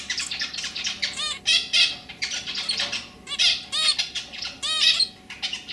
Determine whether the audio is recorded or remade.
recorded